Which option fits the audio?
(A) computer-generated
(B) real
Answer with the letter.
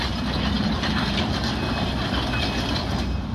B